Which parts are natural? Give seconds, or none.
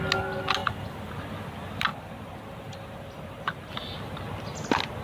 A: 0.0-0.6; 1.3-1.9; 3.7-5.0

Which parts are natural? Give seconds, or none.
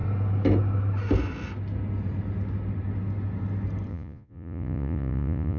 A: 0.0-3.9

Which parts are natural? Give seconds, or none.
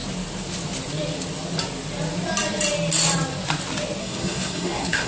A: 0.0-4.0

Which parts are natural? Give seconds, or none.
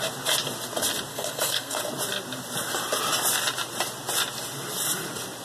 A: 0.0-1.1; 1.8-5.4